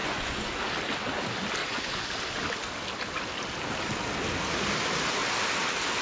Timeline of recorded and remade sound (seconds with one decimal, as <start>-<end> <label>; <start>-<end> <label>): 0.0-0.6 remade; 0.6-1.6 recorded; 1.6-2.1 remade; 2.1-6.0 recorded